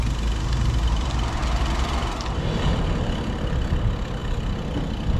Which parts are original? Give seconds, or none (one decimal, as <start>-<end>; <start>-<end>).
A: 0.0-5.2